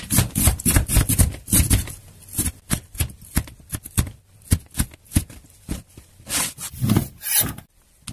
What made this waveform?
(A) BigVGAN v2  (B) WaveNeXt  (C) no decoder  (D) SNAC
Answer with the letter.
C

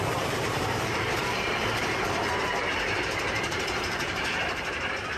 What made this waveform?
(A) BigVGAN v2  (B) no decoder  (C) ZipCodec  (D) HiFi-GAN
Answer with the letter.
A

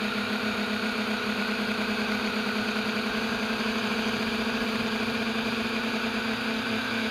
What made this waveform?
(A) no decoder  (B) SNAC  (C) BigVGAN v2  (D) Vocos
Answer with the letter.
C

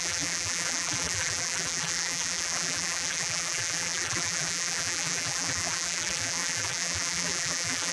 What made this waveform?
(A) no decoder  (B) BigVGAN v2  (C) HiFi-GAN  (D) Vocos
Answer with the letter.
B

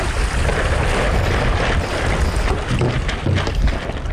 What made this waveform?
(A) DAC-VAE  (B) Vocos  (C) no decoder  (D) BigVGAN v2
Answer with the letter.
C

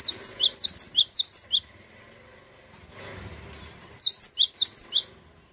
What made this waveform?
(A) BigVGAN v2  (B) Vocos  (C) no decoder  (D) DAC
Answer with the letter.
C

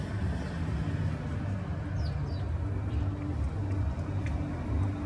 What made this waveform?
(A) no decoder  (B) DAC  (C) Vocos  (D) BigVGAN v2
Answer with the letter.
A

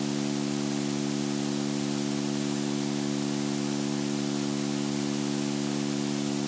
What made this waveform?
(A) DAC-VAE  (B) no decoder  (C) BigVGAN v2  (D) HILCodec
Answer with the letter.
B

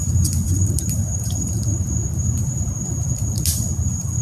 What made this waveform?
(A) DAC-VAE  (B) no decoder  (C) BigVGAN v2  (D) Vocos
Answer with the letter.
C